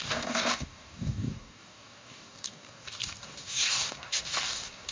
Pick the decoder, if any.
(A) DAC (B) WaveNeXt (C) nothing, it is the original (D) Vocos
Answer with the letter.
A